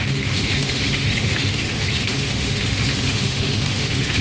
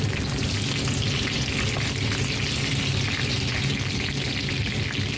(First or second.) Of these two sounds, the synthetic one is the first